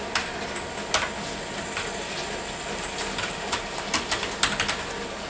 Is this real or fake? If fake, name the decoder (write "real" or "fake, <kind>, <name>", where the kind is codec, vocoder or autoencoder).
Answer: real